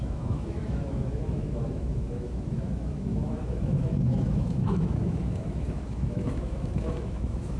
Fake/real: fake